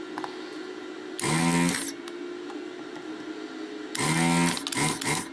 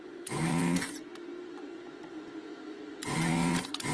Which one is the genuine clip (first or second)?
first